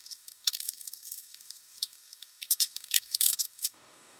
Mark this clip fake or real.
fake